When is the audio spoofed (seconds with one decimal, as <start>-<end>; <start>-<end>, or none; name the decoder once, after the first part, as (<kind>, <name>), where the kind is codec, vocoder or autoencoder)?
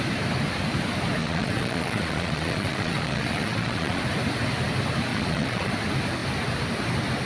1.2-4.0 (vocoder, Vocos); 5.1-5.7